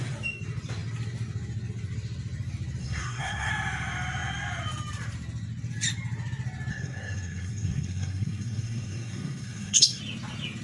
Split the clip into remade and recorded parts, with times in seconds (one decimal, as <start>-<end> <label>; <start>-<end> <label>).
0.0-2.8 recorded; 2.8-3.5 remade; 3.5-6.7 recorded; 6.7-10.0 remade; 10.0-10.6 recorded